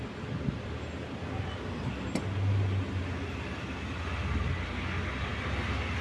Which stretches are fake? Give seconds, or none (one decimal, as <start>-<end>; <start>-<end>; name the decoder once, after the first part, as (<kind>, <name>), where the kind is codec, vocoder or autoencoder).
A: none